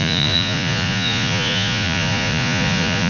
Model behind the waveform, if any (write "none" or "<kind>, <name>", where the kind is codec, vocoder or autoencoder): vocoder, Vocos